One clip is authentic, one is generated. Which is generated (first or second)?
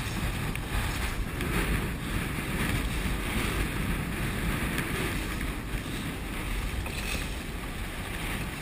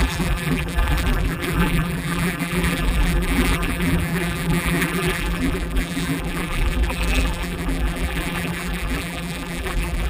second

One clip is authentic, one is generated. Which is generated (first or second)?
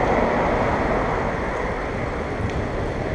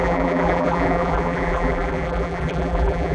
second